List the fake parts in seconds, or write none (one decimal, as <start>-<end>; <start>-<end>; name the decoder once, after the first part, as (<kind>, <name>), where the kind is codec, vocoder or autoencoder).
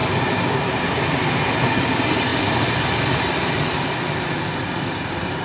none